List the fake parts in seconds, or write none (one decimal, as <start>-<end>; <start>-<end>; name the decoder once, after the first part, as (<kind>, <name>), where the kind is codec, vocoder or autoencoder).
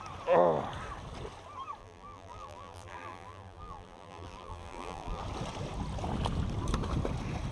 1.8-5.2 (vocoder, BigVGAN v2)